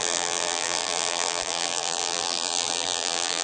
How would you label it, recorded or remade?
remade